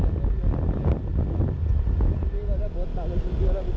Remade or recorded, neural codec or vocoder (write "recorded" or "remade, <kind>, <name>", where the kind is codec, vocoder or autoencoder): recorded